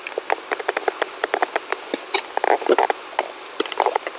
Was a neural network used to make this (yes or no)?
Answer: no